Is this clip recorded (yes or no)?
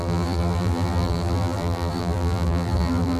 no